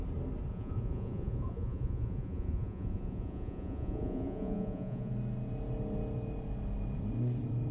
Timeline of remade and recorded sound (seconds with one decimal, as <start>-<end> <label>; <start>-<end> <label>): 0.0-0.5 recorded; 0.5-5.1 remade; 5.1-7.7 recorded